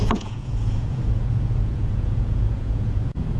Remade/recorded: remade